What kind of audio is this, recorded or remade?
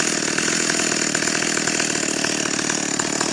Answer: recorded